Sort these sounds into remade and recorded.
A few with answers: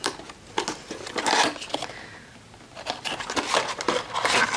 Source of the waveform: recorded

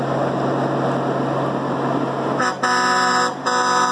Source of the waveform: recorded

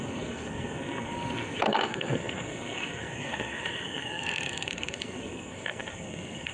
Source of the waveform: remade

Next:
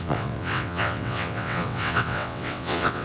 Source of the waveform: remade